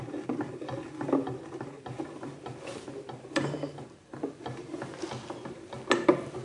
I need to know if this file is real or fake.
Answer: real